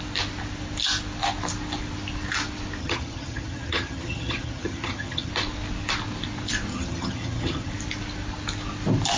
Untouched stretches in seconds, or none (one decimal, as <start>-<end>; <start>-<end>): 0.0-2.8; 5.3-6.7; 7.7-9.2

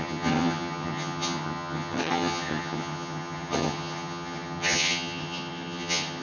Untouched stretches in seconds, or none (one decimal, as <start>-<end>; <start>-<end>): none